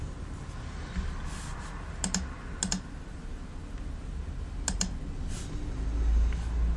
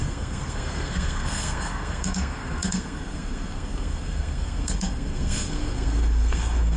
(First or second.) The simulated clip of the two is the second